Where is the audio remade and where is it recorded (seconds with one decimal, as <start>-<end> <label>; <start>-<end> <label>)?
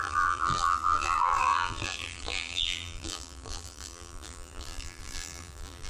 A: 0.0-5.9 remade